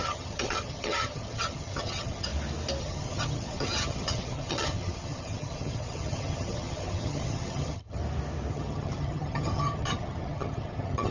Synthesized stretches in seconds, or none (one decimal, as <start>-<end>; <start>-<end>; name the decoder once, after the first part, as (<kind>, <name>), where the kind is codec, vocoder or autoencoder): 0.0-2.3 (vocoder, HiFi-GAN); 2.8-8.0; 8.5-11.1

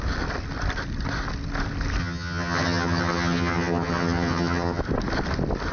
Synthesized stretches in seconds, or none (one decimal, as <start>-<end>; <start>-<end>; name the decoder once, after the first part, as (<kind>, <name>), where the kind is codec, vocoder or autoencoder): 2.0-4.8 (vocoder, HiFi-GAN)

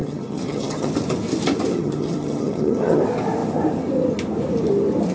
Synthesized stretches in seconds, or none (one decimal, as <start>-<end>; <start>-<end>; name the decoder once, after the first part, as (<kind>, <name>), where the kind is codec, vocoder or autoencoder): 0.0-0.9 (vocoder, HiFi-GAN); 1.7-3.0